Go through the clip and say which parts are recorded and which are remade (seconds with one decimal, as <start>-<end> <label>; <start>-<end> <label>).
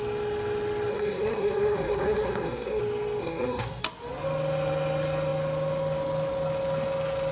0.0-0.9 recorded; 0.9-2.8 remade; 2.8-3.2 recorded; 3.2-3.8 remade; 3.8-7.3 recorded